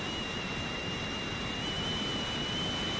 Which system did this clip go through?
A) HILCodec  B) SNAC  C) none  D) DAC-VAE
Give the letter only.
C